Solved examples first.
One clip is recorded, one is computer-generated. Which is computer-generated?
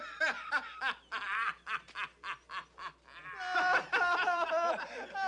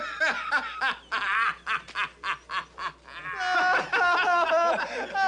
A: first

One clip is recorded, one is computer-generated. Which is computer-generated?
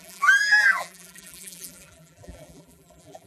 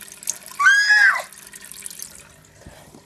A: first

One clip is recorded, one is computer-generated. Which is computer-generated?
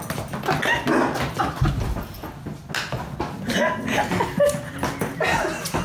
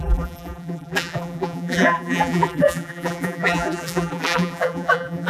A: second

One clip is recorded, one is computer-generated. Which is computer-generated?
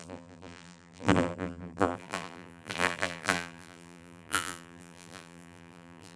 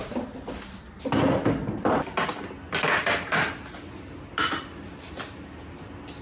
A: first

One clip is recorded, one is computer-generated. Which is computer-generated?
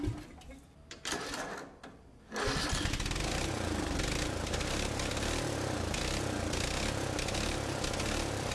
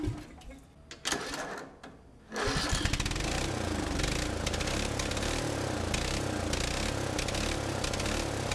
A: first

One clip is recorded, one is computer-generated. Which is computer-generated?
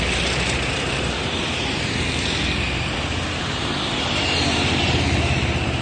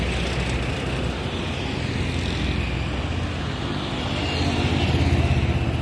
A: first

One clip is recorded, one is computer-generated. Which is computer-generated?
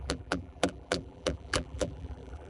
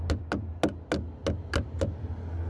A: first